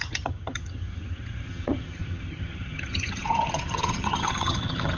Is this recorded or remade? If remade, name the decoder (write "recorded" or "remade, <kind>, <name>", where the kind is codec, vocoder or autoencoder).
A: remade, vocoder, HiFi-GAN